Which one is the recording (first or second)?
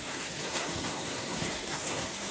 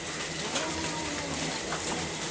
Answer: second